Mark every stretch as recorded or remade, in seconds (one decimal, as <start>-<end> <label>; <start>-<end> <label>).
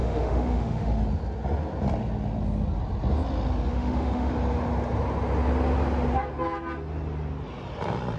0.0-1.0 remade; 1.0-3.7 recorded; 3.7-4.3 remade; 4.3-8.2 recorded